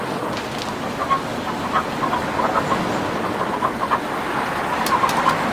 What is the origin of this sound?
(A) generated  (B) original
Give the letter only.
B